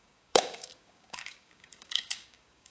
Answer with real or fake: fake